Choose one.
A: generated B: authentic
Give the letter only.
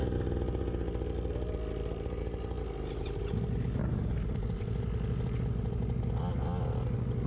B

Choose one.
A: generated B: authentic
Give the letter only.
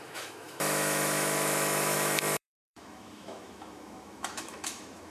A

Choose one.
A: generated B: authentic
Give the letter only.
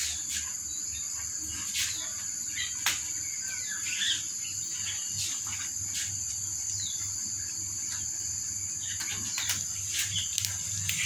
B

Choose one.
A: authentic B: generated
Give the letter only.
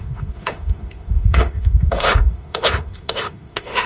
B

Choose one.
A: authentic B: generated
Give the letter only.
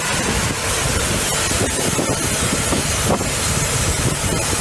A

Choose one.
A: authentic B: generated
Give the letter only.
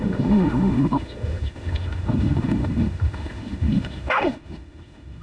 B